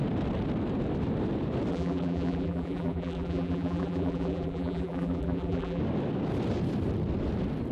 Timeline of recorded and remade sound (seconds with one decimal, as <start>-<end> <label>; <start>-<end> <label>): 0.0-1.7 recorded; 1.7-5.8 remade; 5.8-7.7 recorded